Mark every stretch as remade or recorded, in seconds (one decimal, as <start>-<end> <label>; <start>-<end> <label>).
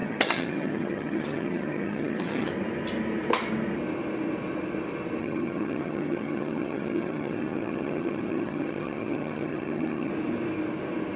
0.0-2.5 remade; 2.5-5.2 recorded; 5.2-10.1 remade; 10.1-11.2 recorded